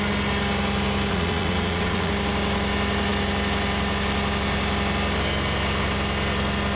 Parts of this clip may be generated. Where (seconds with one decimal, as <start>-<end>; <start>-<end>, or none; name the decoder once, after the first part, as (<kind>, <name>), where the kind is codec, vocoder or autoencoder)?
1.1-2.1 (vocoder, Vocos)